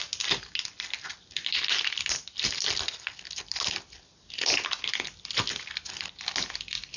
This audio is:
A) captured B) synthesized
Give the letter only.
A